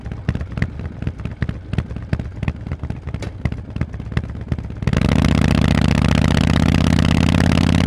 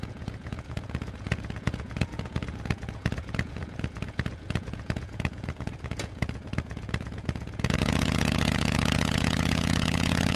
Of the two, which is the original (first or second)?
first